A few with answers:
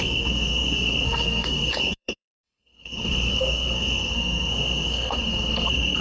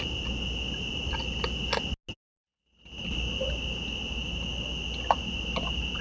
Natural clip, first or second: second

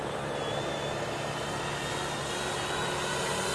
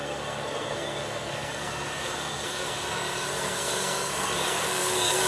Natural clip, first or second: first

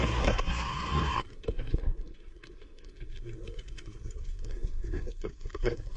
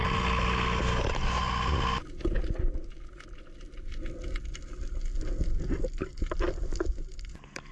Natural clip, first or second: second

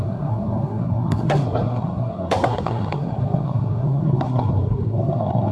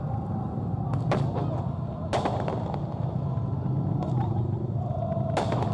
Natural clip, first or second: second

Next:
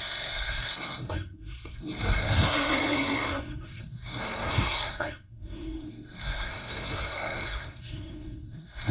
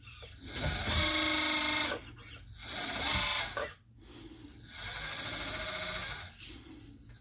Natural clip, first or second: second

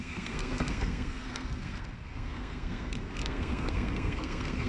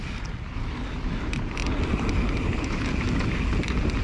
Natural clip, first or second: second